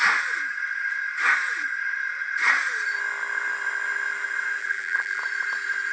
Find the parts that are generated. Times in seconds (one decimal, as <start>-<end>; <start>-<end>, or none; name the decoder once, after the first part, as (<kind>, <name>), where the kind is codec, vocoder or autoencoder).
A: 4.6-5.2 (vocoder, BigVGAN v2)